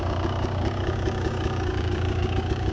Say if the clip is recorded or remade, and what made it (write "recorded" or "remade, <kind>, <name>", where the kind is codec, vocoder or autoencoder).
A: remade, codec, DAC